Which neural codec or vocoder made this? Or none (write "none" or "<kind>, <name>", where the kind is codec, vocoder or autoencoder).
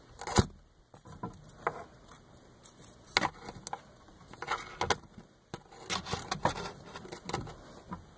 none